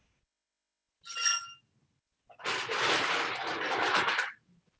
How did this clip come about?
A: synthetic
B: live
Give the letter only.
B